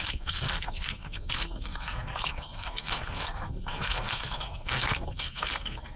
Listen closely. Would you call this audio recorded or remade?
remade